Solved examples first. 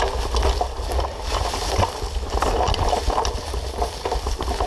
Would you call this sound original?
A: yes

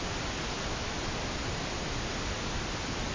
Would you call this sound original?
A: yes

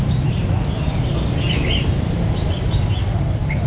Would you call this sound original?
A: no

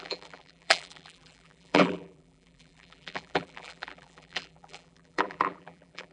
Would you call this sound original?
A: no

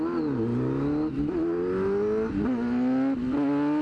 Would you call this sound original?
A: yes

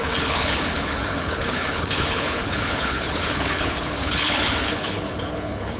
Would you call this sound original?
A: no